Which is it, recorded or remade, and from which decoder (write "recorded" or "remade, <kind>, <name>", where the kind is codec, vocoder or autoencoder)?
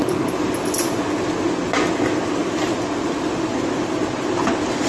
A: recorded